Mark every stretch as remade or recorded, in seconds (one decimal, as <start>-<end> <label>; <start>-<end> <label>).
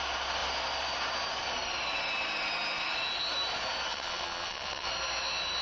0.0-3.9 recorded; 3.9-4.9 remade; 4.9-5.6 recorded